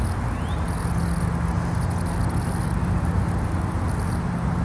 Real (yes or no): yes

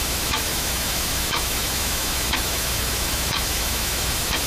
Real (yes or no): no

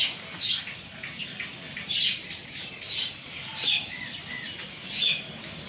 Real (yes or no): yes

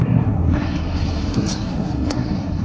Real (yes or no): no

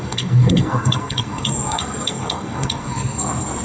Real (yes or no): no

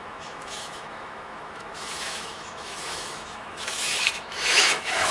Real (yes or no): no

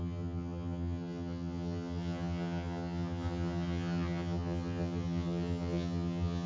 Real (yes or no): no